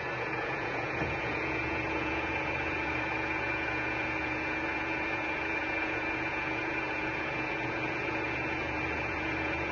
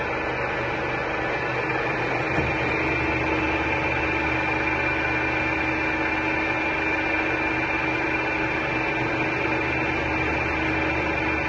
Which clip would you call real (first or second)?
second